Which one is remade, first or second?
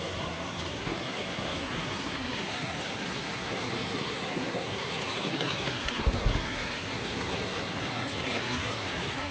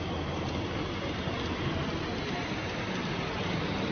first